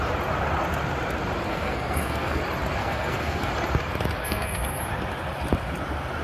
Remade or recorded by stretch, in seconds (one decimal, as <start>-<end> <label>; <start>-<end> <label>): 0.0-1.5 recorded; 1.5-2.4 remade; 2.4-2.8 recorded; 2.8-3.5 remade; 3.5-4.2 recorded; 4.2-4.8 remade; 4.8-6.2 recorded